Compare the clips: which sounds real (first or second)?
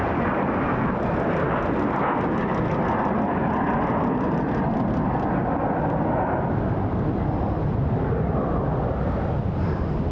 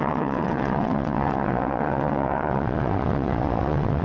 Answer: first